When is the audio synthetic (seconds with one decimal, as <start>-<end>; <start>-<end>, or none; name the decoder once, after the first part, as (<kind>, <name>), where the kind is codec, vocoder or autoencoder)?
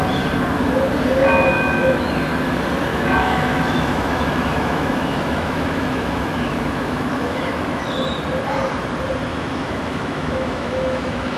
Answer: 1.2-2.1 (autoencoder, DAC-VAE); 2.9-7.8; 9.3-11.4